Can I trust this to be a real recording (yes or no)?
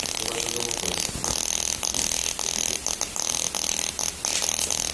yes